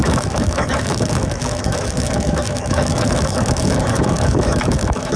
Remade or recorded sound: remade